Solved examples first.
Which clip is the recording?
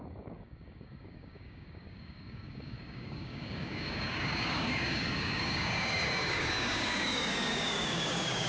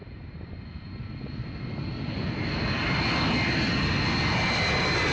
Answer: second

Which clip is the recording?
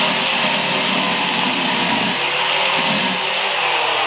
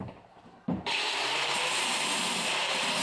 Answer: first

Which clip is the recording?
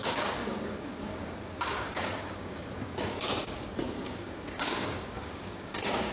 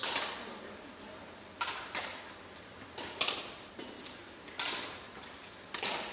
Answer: second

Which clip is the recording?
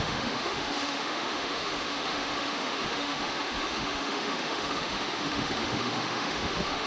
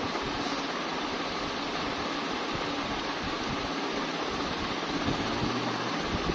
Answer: second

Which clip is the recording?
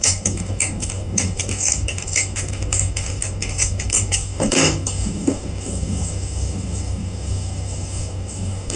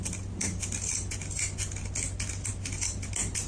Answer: second